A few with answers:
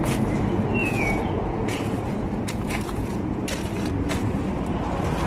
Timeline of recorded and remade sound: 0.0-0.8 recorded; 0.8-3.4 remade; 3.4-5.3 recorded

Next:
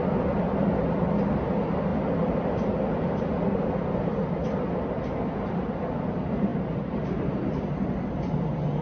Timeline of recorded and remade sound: 0.0-6.5 recorded; 6.5-7.4 remade; 7.4-8.8 recorded

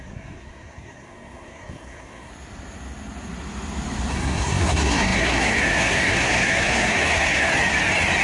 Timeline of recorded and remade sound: 0.0-2.3 remade; 2.3-4.1 recorded; 4.1-7.5 remade; 7.5-8.2 recorded

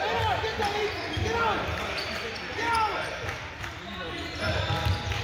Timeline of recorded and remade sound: 0.0-5.2 recorded

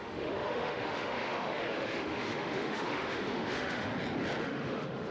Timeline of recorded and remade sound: 0.0-3.9 remade; 3.9-4.4 recorded; 4.4-5.1 remade

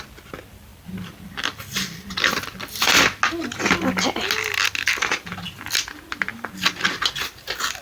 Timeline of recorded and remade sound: 0.0-0.7 recorded; 0.7-2.3 remade; 2.3-7.8 recorded